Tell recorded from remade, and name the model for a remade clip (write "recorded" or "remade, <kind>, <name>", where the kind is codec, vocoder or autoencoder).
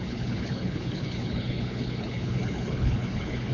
remade, codec, HILCodec